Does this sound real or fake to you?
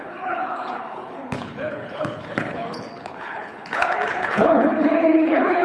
fake